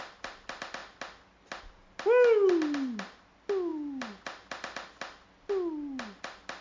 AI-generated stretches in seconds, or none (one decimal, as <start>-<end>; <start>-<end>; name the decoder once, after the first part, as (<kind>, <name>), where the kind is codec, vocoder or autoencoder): none